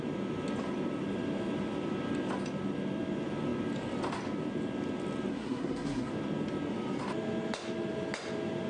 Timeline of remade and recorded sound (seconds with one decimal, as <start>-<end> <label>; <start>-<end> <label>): 0.0-5.3 recorded; 5.3-6.1 remade; 6.1-8.7 recorded